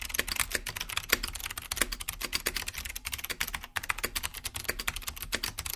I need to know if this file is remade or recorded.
recorded